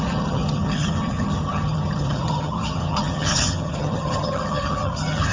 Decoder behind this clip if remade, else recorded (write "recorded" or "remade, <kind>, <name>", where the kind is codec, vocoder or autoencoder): remade, vocoder, HiFi-GAN